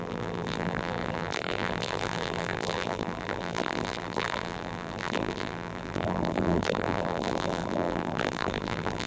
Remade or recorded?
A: remade